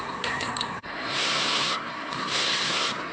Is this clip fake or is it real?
fake